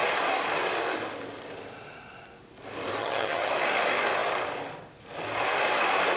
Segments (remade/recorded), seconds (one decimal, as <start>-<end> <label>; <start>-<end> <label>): 0.0-3.0 recorded; 3.0-3.5 remade; 3.5-6.2 recorded